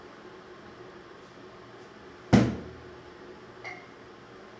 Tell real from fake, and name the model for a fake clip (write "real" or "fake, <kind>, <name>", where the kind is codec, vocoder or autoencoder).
real